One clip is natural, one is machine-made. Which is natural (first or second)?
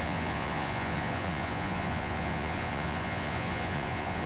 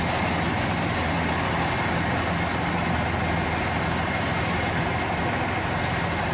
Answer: second